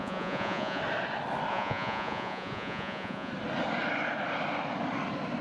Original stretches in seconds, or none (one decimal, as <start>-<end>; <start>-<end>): 0.8-1.5; 3.3-5.4